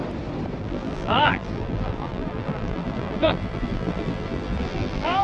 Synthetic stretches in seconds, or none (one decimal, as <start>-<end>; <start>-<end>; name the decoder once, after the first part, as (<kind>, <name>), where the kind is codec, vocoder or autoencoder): 0.6-5.2 (vocoder, BigVGAN v2)